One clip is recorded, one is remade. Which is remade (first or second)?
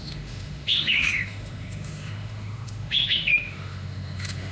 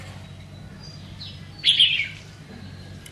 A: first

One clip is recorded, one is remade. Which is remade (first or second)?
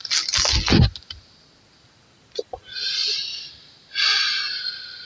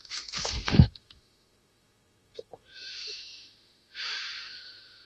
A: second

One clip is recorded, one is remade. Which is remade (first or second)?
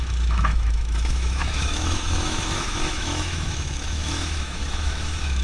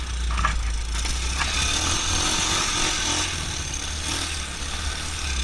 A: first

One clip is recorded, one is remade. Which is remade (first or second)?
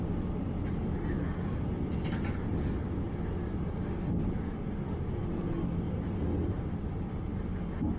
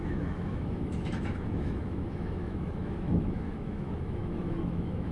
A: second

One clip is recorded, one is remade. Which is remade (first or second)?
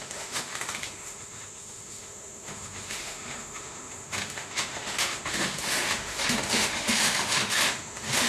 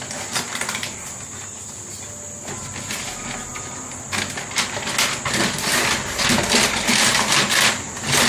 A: first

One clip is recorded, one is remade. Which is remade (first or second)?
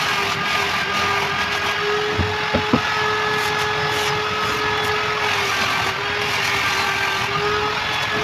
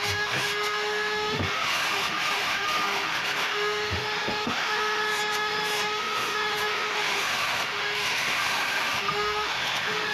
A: second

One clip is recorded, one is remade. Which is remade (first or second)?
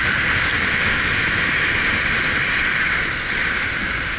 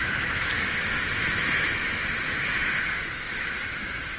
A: second